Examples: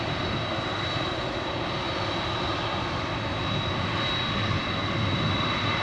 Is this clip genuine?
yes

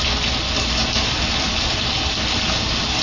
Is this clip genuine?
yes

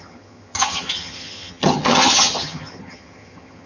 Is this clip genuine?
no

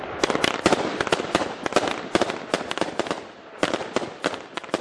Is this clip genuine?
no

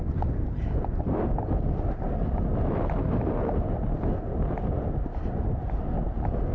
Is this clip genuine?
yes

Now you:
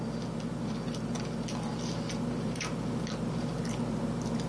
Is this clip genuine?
yes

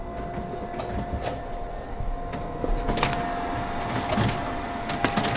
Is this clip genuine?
yes